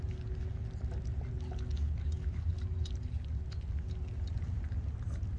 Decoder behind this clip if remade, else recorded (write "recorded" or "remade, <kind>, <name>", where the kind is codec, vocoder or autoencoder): recorded